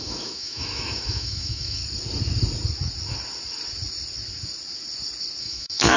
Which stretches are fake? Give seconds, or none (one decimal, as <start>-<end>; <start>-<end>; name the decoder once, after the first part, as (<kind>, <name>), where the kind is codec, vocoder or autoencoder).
0.0-1.8 (autoencoder, DAC-VAE); 5.4-6.0

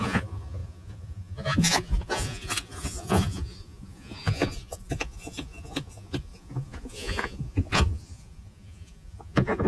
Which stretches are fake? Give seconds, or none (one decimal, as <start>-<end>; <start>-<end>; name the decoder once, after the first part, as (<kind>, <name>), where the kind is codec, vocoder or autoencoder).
0.0-9.7 (vocoder, Vocos)